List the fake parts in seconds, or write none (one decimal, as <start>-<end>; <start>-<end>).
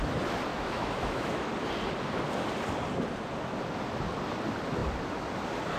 0.5-1.5